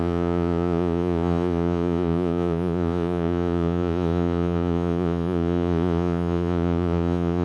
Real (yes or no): no